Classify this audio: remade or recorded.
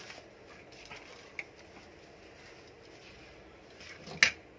recorded